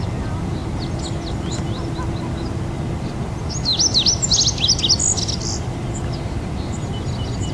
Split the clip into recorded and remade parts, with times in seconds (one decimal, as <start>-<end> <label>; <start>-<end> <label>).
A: 0.0-7.5 recorded